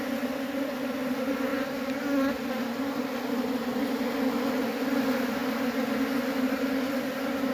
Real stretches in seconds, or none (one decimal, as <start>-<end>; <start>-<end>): 3.7-4.6; 5.4-7.1